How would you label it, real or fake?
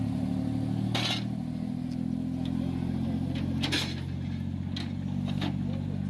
real